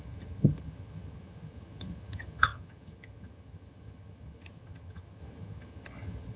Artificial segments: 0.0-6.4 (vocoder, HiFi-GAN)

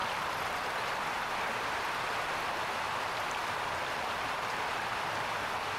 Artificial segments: none

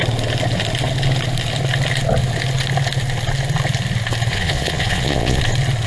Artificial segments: 4.3-5.4 (vocoder, Vocos)

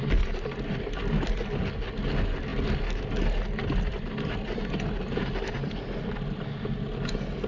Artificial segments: none

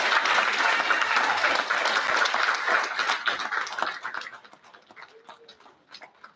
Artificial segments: none

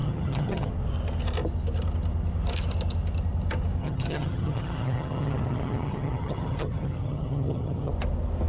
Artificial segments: 0.0-0.7 (vocoder, HiFi-GAN); 3.8-7.9